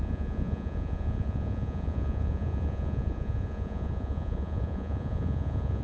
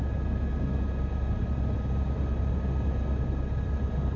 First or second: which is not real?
first